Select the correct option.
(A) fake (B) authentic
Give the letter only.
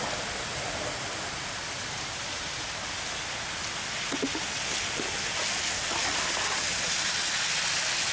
B